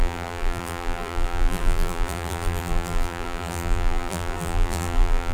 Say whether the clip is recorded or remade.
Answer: remade